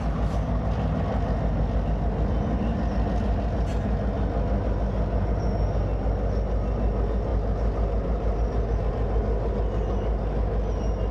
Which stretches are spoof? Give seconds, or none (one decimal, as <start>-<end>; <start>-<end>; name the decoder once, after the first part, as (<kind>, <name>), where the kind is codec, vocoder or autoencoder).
none